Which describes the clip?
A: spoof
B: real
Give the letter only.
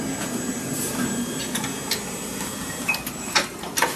B